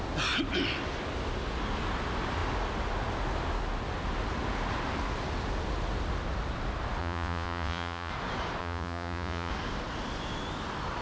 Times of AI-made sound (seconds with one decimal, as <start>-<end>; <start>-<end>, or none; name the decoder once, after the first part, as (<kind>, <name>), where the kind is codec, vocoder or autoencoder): 7.0-8.1 (vocoder, Vocos); 8.6-9.5